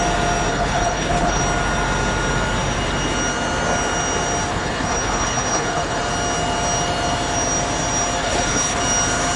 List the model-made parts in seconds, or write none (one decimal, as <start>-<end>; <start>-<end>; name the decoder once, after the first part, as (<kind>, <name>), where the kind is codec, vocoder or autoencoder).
0.5-1.4 (codec, HILCodec); 4.5-6.0; 8.2-8.8